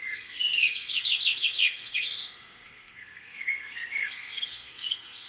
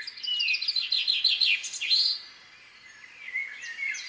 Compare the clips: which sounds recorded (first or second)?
second